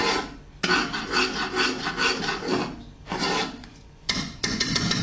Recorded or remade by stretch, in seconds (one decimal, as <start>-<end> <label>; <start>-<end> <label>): 0.0-3.6 recorded; 3.6-5.0 remade